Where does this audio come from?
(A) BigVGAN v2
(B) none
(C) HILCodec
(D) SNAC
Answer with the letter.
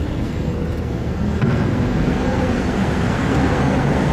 D